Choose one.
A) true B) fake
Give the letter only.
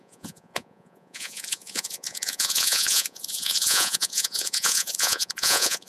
B